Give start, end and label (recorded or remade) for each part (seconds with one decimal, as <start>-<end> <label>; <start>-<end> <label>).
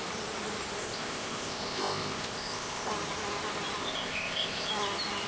0.0-0.8 recorded; 0.8-2.9 remade; 2.9-3.8 recorded; 3.8-4.7 remade; 4.7-5.3 recorded